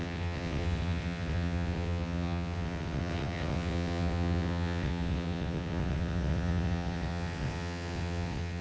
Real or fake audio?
fake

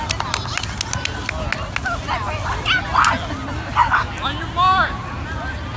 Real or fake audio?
real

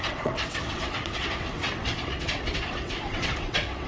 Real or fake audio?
fake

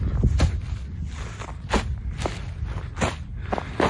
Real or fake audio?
real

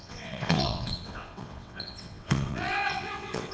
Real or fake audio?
fake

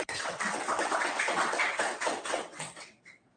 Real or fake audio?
fake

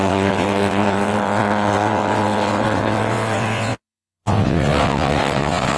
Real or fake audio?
fake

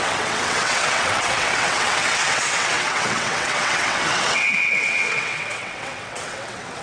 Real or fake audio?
fake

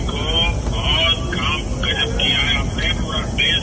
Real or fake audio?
real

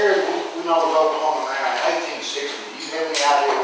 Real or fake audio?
real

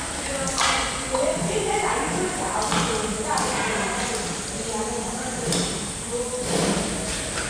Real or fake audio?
real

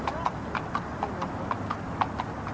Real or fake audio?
real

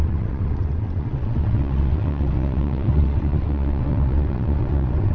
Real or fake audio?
fake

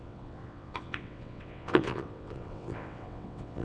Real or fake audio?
fake